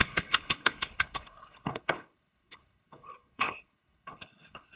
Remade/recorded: remade